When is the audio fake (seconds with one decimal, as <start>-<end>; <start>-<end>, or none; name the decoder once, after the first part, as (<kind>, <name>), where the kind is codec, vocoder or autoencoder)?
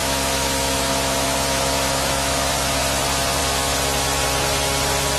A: 0.0-2.8 (autoencoder, DAC-VAE)